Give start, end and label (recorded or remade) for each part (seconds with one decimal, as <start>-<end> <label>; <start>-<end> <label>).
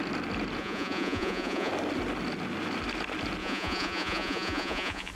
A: 0.0-0.6 recorded; 0.6-1.7 remade; 1.7-3.4 recorded; 3.4-5.1 remade